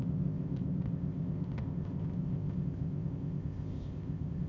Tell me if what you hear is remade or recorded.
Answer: remade